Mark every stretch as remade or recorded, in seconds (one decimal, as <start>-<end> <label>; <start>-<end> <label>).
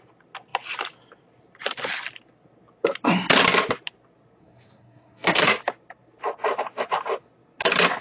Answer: 0.0-4.4 recorded; 4.4-5.6 remade; 5.6-8.0 recorded